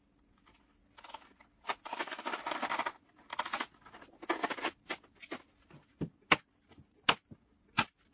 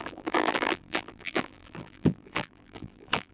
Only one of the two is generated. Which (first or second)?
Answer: second